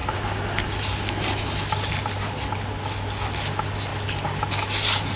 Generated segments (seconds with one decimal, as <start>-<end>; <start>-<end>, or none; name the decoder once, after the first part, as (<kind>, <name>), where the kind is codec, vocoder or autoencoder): none